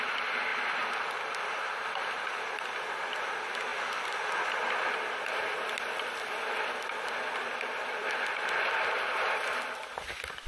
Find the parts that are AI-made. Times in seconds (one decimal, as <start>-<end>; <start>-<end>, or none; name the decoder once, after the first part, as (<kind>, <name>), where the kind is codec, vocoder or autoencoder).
0.5-2.9 (vocoder, BigVGAN v2)